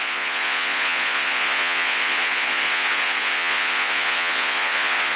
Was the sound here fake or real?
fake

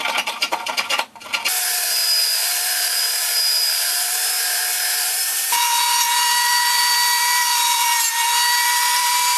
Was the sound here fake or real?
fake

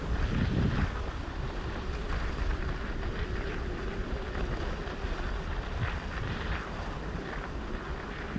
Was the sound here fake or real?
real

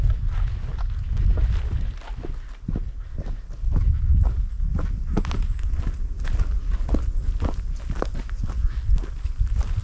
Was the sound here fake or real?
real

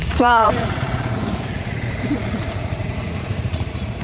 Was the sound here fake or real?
fake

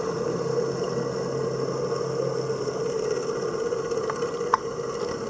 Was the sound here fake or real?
real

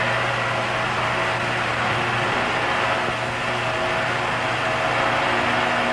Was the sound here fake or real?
real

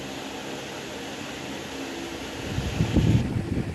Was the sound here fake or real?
real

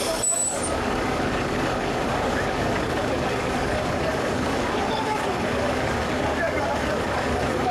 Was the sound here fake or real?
fake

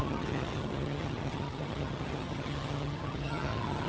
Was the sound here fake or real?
fake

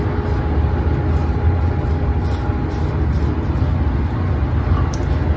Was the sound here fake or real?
real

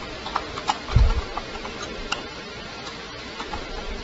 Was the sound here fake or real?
real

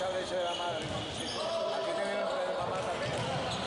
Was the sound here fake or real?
real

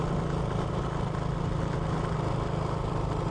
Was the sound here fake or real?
real